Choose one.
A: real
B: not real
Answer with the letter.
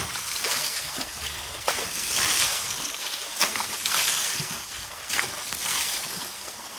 B